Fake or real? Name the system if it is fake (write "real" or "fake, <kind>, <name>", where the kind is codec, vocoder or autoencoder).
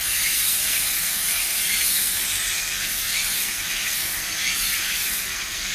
fake, codec, SNAC